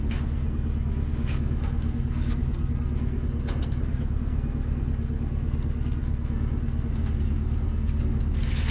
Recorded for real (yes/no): no